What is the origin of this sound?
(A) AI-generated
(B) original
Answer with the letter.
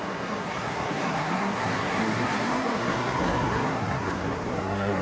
A